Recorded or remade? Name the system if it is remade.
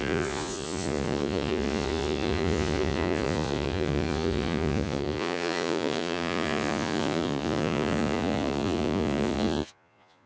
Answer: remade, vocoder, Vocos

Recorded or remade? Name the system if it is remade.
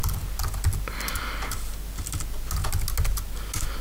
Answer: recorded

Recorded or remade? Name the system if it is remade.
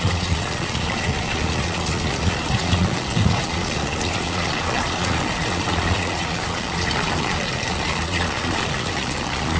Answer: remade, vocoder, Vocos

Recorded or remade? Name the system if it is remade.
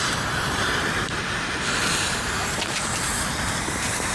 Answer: remade, vocoder, BigVGAN v2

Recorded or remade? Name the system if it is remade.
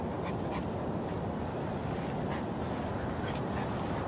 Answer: recorded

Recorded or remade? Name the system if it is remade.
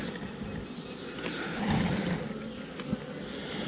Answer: recorded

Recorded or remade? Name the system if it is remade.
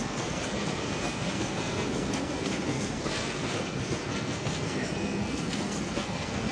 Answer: remade, codec, SNAC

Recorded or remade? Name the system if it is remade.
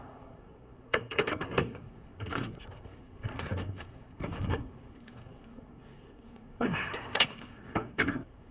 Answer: remade, codec, SNAC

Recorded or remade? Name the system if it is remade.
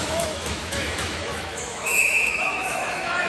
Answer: remade, autoencoder, DAC-VAE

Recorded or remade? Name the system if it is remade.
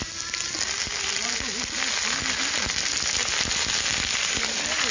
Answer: recorded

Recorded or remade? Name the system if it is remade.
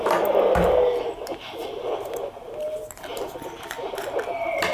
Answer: recorded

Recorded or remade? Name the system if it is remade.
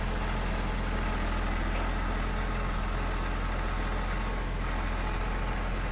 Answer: recorded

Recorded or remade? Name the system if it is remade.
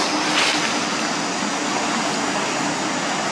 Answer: recorded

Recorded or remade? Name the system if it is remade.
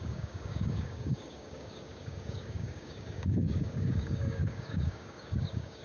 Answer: remade, codec, DAC